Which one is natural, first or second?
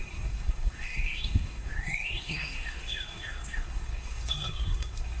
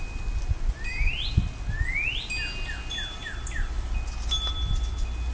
second